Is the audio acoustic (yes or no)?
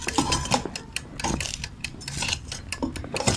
yes